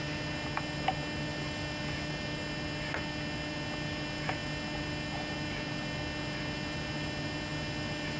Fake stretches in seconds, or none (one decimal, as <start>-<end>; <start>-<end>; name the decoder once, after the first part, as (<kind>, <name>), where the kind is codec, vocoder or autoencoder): none